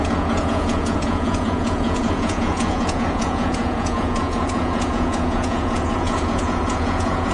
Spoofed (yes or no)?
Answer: yes